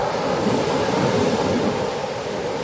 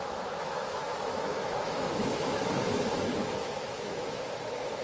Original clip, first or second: first